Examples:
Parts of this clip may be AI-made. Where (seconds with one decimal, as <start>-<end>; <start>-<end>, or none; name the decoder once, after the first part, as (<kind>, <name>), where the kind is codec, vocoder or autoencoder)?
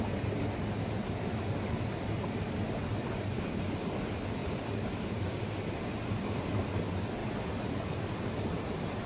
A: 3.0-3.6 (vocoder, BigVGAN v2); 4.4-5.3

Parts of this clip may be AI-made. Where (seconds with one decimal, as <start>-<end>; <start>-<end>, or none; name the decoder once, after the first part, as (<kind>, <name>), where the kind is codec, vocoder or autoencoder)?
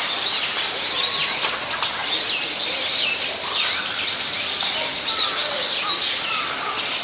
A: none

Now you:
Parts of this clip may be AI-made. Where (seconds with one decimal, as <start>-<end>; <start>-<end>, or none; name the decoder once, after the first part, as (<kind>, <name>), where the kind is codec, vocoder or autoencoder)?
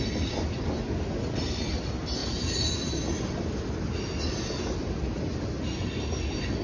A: none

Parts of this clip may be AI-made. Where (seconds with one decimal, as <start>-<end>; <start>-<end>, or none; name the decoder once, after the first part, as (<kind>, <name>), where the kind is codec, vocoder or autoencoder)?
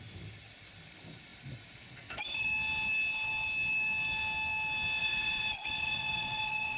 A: 5.0-6.8 (vocoder, Vocos)